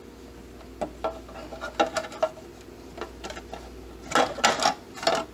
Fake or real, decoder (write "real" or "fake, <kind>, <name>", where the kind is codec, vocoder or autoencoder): real